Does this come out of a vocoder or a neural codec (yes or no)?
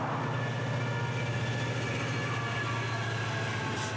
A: no